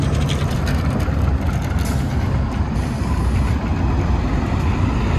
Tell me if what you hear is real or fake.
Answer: real